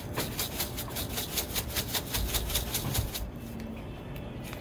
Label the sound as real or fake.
real